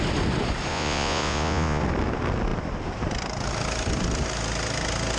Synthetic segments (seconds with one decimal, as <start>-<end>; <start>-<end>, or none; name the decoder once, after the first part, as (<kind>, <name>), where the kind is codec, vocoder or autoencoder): 0.7-1.8 (vocoder, Vocos)